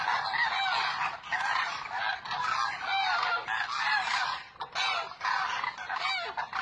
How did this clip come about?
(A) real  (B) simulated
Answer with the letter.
A